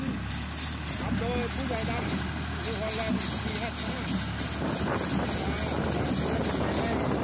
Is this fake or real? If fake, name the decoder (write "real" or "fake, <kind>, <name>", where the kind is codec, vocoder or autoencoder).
real